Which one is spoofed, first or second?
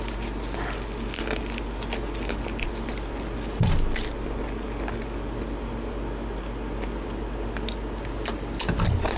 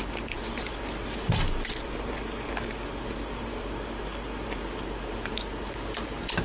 second